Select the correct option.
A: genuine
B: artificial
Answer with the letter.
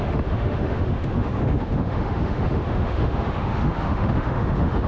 B